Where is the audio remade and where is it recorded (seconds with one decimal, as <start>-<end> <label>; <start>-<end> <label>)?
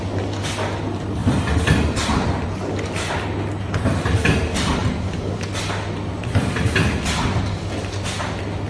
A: 0.0-8.7 recorded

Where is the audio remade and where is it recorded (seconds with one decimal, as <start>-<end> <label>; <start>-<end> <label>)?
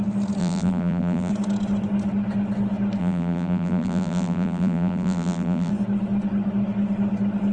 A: 0.0-0.4 recorded; 0.4-1.3 remade; 1.3-3.0 recorded; 3.0-5.7 remade; 5.7-7.5 recorded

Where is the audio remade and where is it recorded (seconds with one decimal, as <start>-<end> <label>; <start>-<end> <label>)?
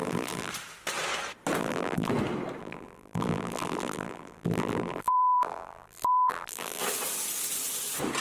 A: 0.0-0.5 remade; 0.5-1.6 recorded; 1.6-2.1 remade; 2.1-2.6 recorded; 2.6-6.8 remade; 6.8-8.2 recorded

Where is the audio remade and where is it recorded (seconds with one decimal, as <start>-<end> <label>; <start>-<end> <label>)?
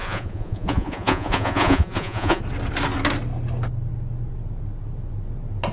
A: 0.0-2.4 remade; 2.4-5.7 recorded